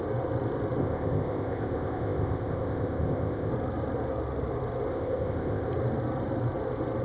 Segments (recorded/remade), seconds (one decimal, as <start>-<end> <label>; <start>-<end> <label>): 0.0-0.8 recorded; 0.8-3.5 remade; 3.5-4.9 recorded; 4.9-5.7 remade; 5.7-7.0 recorded